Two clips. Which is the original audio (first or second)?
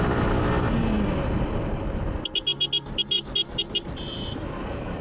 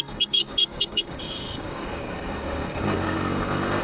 first